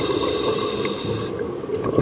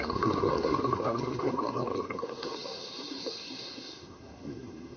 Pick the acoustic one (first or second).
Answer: first